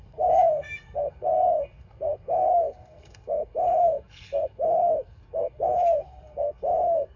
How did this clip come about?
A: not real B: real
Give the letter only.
A